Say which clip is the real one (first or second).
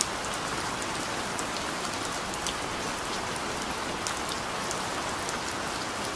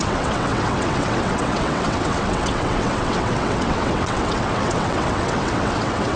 first